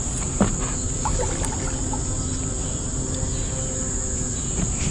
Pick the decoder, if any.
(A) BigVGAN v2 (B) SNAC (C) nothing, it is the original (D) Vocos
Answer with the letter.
C